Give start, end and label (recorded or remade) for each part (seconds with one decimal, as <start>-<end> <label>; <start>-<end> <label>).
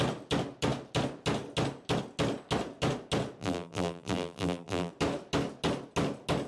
0.0-3.4 recorded; 3.4-4.9 remade; 4.9-6.5 recorded